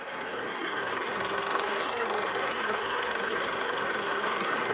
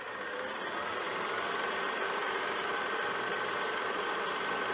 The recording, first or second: second